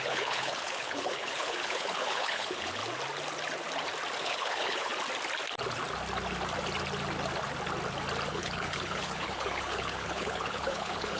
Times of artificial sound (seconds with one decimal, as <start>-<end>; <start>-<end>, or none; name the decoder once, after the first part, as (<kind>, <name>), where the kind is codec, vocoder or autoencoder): 0.0-2.8 (codec, HILCodec); 4.2-4.9; 8.3-11.2